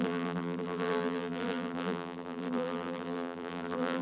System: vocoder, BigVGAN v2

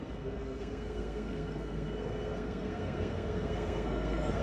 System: codec, SNAC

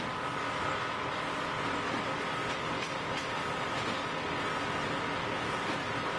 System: none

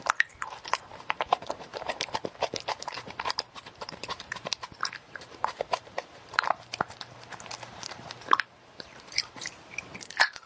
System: vocoder, BigVGAN v2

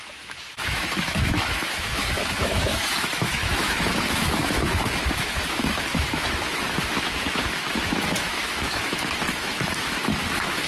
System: autoencoder, DAC-VAE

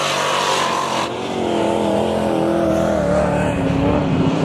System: none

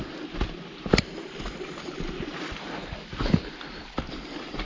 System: none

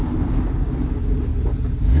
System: none